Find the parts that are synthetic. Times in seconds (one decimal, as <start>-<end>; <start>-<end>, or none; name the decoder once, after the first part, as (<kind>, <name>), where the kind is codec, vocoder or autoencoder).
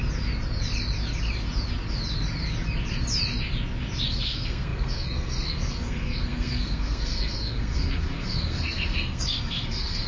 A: 4.1-10.1 (codec, SNAC)